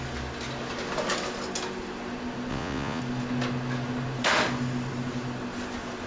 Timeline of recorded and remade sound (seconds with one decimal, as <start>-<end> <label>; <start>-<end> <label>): 0.0-2.5 recorded; 2.5-3.0 remade; 3.0-6.1 recorded

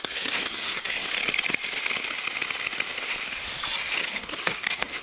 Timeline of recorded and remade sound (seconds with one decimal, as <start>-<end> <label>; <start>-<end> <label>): 0.0-1.1 remade; 1.1-4.1 recorded; 4.1-5.0 remade